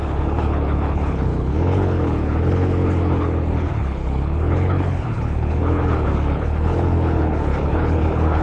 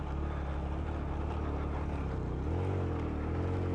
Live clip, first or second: second